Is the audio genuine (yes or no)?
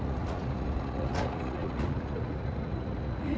no